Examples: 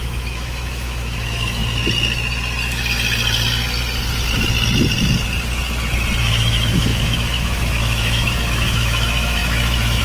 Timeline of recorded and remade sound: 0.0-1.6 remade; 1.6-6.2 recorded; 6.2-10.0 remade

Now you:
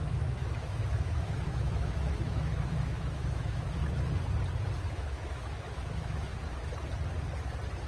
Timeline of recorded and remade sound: 0.0-3.8 remade; 3.8-4.9 recorded; 4.9-6.3 remade; 6.3-7.9 recorded

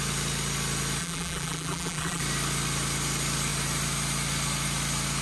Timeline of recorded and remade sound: 0.0-1.0 recorded; 1.0-2.2 remade; 2.2-5.2 recorded

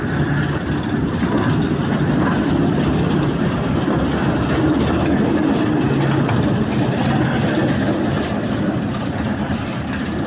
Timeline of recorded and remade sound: 0.0-10.3 recorded